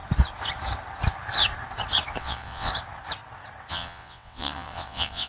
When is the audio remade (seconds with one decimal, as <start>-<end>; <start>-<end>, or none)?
2.2-2.7; 3.7-5.3